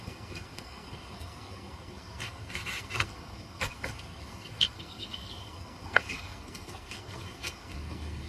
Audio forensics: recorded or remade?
remade